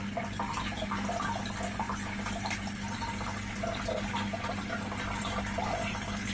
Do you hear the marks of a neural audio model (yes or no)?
no